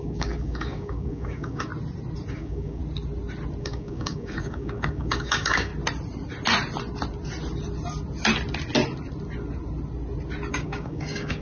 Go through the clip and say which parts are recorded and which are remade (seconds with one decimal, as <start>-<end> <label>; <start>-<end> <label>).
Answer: 0.0-1.7 remade; 1.7-2.3 recorded; 2.3-2.8 remade; 2.8-3.6 recorded; 3.6-5.7 remade; 5.7-10.5 recorded; 10.5-11.4 remade